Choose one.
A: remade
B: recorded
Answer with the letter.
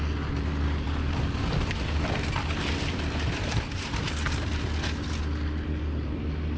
B